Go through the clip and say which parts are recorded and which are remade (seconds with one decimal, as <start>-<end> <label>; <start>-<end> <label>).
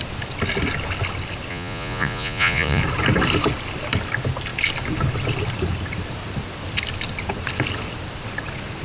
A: 0.0-1.5 recorded; 1.5-2.8 remade; 2.8-8.8 recorded